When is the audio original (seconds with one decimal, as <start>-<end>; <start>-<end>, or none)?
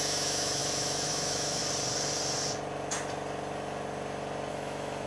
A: 1.6-4.5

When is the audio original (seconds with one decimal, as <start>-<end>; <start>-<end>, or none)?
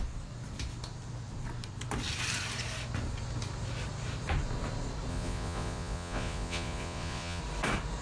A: 0.0-5.1; 7.4-8.0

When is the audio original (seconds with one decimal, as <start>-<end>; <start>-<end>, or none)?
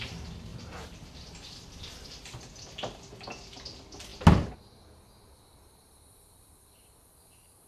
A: 0.0-7.7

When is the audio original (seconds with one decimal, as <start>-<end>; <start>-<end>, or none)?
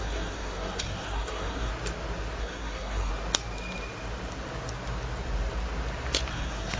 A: 1.7-2.4; 3.1-6.3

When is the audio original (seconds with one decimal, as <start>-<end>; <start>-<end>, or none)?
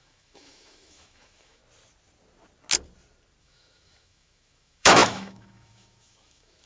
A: 1.6-3.4